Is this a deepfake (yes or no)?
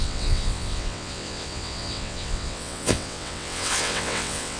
yes